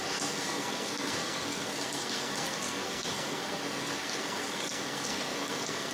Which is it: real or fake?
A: fake